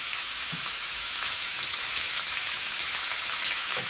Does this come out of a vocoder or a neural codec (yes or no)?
yes